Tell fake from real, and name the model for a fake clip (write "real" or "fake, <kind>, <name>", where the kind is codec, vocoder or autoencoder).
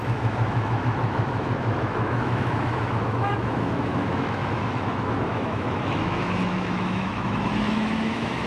fake, autoencoder, DAC-VAE